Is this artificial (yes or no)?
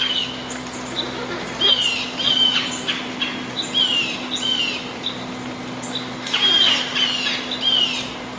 no